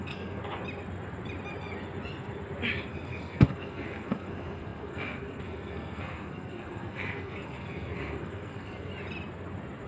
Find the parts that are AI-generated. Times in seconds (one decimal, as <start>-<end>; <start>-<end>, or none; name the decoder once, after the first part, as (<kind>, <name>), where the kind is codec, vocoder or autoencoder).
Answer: 0.0-0.4 (codec, SNAC); 2.9-8.9